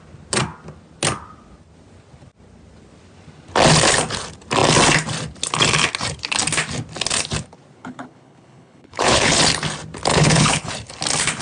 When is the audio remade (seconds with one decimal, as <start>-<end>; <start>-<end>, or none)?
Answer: 7.8-9.4; 10.1-10.7